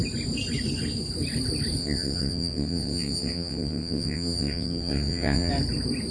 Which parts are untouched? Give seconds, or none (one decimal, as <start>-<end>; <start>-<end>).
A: 0.0-1.8; 5.5-6.1